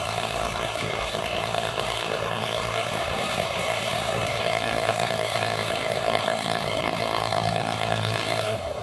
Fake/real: fake